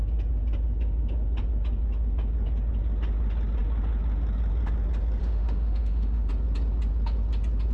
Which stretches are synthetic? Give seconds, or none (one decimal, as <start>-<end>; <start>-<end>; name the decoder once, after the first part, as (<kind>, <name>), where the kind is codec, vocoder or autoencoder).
5.2-6.3 (autoencoder, DAC-VAE)